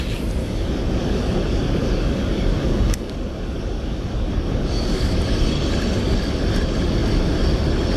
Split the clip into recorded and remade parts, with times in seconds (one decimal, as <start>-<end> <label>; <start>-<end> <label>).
0.0-0.4 recorded; 0.4-5.2 remade; 5.2-8.0 recorded